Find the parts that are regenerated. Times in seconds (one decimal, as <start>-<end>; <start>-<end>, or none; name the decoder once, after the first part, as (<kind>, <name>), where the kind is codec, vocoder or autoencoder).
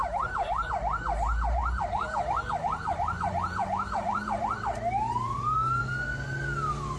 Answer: 0.0-0.7 (vocoder, BigVGAN v2); 1.6-5.8